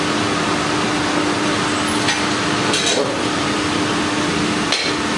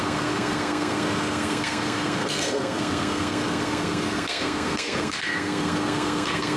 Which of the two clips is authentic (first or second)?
first